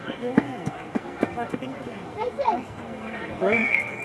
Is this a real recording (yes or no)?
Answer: no